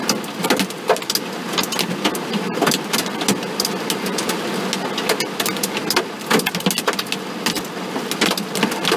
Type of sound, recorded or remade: recorded